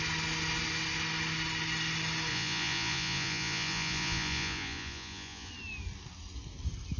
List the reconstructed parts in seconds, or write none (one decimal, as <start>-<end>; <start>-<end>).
2.3-5.5

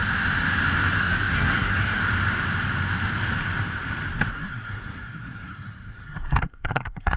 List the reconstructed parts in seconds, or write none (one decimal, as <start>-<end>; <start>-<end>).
1.0-2.0; 4.3-7.2

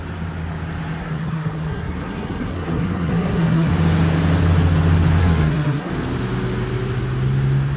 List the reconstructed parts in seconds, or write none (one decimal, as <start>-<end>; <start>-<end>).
1.0-3.7; 5.2-5.9